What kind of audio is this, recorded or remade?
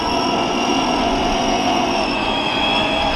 remade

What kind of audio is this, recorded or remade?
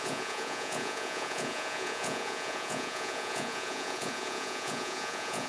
remade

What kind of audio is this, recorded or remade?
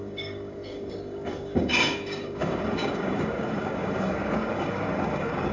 remade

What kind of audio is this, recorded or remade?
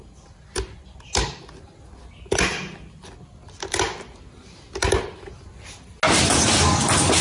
recorded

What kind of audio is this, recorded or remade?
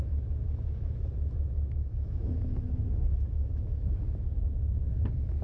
remade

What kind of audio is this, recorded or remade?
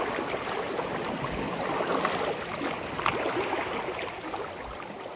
recorded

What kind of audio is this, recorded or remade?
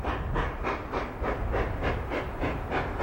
recorded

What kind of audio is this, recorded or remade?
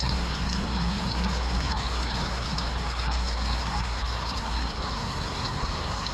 remade